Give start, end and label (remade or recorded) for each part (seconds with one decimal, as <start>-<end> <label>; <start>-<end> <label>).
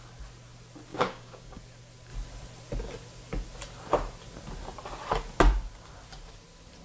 0.0-0.9 recorded; 0.9-1.6 remade; 1.6-6.8 recorded